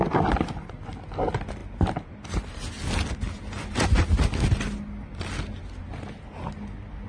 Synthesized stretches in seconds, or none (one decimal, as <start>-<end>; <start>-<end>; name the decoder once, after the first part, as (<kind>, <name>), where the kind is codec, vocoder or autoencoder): none